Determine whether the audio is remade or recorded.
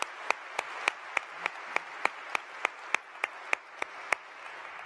recorded